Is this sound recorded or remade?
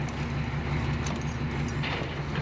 recorded